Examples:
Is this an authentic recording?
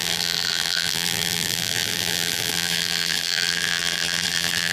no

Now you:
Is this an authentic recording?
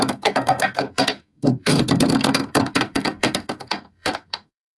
no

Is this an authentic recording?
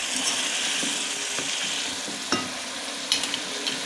yes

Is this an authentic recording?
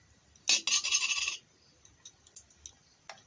yes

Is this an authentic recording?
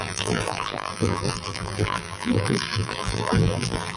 no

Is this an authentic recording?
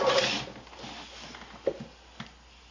yes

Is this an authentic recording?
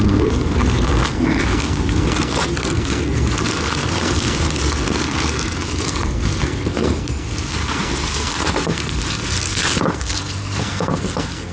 no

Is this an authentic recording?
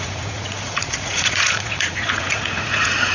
no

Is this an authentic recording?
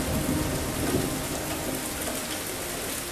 yes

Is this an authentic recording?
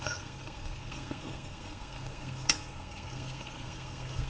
no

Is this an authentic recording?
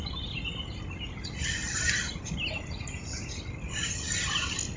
yes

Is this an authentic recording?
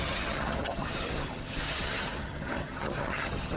no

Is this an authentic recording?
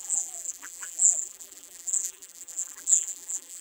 no